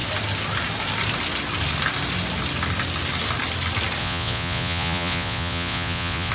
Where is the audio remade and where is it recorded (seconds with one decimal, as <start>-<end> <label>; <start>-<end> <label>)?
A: 0.0-4.0 recorded; 4.0-6.3 remade